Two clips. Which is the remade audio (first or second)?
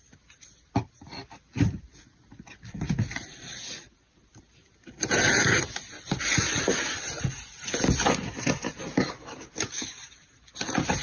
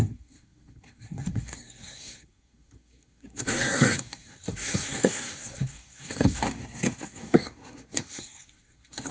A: second